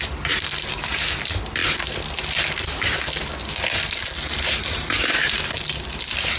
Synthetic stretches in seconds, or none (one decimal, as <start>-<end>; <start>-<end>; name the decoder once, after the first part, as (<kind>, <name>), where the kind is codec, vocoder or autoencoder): none